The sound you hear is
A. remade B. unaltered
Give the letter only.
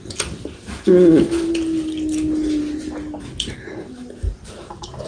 B